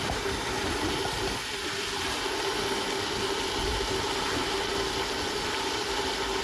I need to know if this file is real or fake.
real